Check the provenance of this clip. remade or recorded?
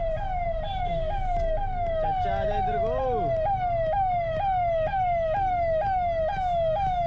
recorded